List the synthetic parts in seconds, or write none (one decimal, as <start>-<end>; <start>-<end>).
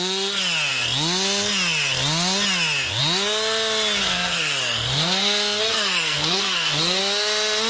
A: 4.0-7.0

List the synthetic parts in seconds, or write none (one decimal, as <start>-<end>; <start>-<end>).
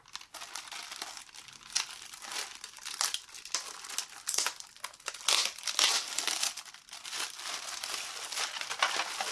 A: none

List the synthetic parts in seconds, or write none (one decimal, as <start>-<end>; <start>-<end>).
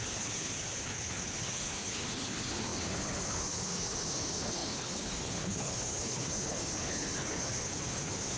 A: 0.0-8.4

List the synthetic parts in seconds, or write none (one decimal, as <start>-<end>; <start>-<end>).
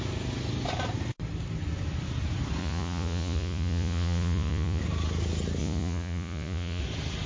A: 2.6-4.8; 5.6-6.8